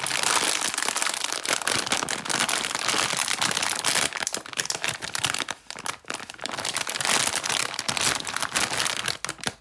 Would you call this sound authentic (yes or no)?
yes